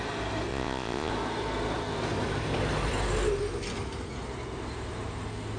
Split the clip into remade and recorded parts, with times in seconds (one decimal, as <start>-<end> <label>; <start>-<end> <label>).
0.0-0.5 recorded; 0.5-1.1 remade; 1.1-5.6 recorded